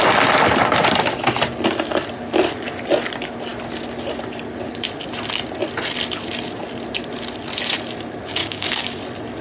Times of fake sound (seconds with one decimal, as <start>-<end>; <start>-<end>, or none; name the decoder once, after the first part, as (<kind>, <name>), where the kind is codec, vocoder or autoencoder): 8.4-9.0 (codec, DAC)